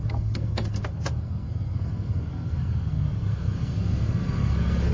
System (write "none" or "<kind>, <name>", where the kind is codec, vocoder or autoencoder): codec, SNAC